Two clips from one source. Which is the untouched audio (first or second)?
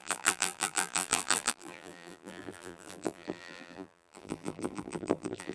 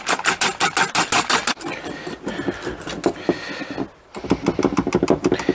second